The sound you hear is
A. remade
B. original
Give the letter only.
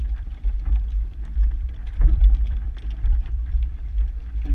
A